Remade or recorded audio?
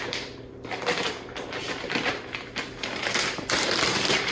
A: remade